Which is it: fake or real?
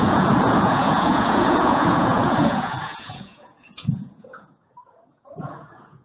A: fake